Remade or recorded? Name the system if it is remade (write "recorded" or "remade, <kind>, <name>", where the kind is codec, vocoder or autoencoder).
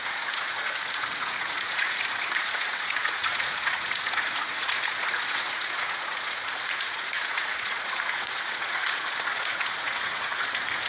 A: remade, vocoder, Vocos